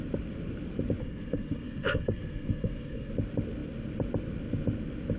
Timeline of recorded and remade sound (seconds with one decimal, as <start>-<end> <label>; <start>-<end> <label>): 0.0-1.0 recorded; 1.0-3.1 remade; 3.1-5.2 recorded